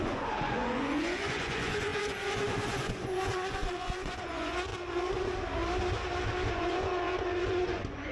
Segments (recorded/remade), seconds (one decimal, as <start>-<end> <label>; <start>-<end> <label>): 0.0-4.7 remade; 4.7-6.5 recorded; 6.5-8.1 remade

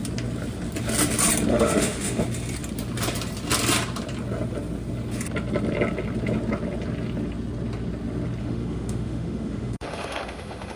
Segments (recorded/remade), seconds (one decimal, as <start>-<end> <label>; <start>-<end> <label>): 0.0-1.5 recorded; 1.5-2.2 remade; 2.2-8.4 recorded; 8.4-10.8 remade

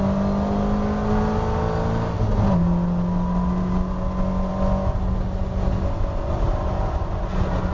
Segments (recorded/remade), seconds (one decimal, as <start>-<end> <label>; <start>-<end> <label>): 0.0-7.7 recorded

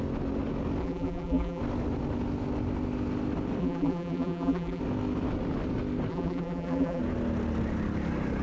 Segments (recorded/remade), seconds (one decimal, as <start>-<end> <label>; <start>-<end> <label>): 0.0-0.8 recorded; 0.8-1.6 remade; 1.6-3.6 recorded; 3.6-4.8 remade; 4.8-6.1 recorded; 6.1-7.0 remade; 7.0-8.4 recorded

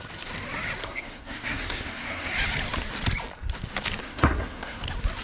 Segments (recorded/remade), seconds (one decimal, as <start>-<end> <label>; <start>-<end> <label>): 0.0-0.8 recorded; 0.8-2.3 remade; 2.3-4.0 recorded; 4.0-4.8 remade; 4.8-5.2 recorded